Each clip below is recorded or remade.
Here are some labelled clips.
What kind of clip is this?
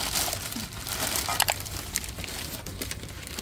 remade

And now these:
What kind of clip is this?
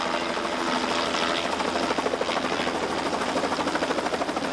recorded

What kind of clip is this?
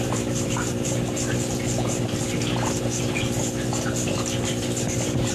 recorded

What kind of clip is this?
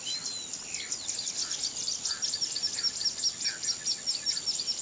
recorded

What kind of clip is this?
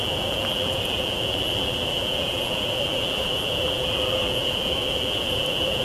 remade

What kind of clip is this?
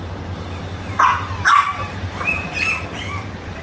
remade